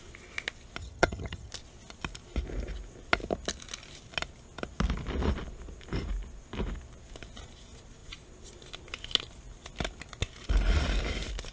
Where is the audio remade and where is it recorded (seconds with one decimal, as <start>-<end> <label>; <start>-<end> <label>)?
0.0-0.8 recorded; 0.8-1.5 remade; 1.5-11.5 recorded